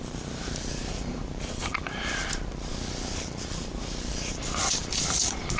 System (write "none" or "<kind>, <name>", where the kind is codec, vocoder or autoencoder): vocoder, BigVGAN v2